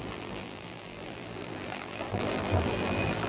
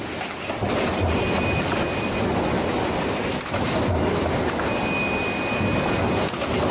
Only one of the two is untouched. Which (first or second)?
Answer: second